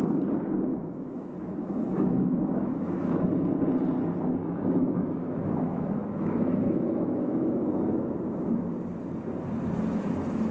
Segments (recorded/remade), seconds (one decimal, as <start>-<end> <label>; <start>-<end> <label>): 0.0-0.7 recorded; 0.7-3.2 remade; 3.2-4.4 recorded; 4.4-8.6 remade; 8.6-10.5 recorded